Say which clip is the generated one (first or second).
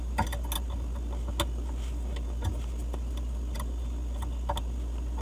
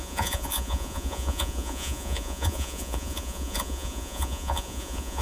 second